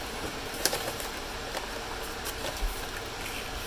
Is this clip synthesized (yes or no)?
no